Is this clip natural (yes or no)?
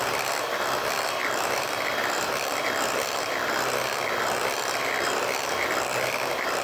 yes